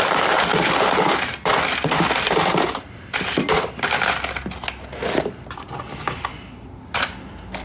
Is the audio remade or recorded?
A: recorded